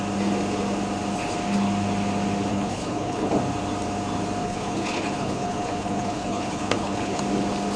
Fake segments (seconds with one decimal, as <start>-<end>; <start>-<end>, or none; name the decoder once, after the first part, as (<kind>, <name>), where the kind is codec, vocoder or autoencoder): 2.5-3.3 (codec, HILCodec); 4.4-7.2

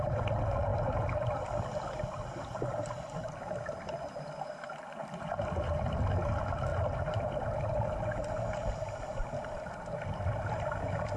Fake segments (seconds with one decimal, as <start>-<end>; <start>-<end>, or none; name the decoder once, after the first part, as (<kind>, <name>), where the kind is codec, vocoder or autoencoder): none

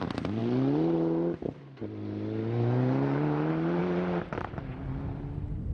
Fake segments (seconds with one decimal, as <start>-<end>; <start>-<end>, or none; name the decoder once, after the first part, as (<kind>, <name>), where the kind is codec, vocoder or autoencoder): none

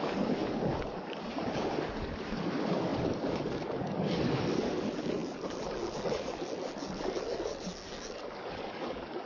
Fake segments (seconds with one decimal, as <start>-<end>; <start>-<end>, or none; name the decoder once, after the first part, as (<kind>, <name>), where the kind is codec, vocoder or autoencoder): 0.0-9.3 (codec, DAC)

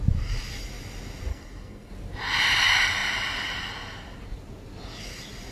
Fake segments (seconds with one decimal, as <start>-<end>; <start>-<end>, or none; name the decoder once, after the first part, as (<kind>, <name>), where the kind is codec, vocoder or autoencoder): 1.3-1.9 (codec, SNAC)

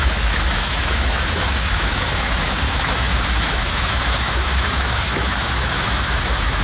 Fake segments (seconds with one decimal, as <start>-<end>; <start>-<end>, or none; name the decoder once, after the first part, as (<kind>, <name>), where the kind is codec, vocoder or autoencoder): 0.0-6.6 (autoencoder, DAC-VAE)

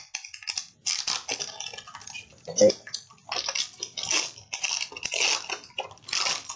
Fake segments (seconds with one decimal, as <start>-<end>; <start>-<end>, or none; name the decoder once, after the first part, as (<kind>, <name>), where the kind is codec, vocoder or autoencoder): none

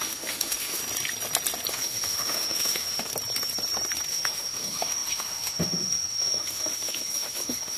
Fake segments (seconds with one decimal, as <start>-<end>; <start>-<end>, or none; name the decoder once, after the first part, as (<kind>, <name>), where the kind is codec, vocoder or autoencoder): 0.0-0.8 (autoencoder, DAC-VAE); 1.7-3.1; 4.1-7.8